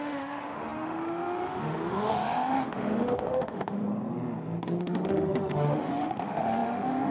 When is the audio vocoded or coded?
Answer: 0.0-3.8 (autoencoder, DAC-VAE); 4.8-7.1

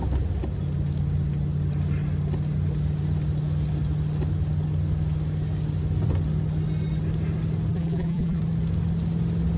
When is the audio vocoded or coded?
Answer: 7.7-8.4 (vocoder, BigVGAN v2)

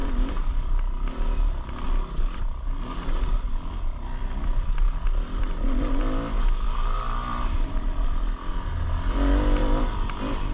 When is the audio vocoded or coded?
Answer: 0.0-0.5 (vocoder, BigVGAN v2); 7.3-8.5; 9.6-10.5

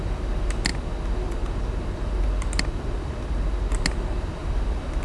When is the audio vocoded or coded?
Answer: none